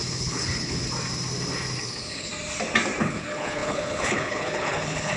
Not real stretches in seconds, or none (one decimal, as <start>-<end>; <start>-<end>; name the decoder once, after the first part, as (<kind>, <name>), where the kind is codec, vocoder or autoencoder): 0.0-0.8 (codec, HILCodec); 1.8-2.3; 3.0-5.2